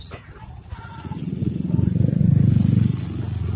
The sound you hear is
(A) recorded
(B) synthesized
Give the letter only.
B